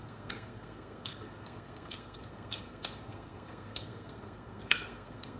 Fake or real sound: fake